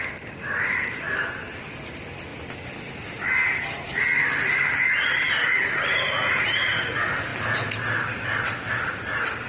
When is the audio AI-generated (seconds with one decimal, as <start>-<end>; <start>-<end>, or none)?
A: none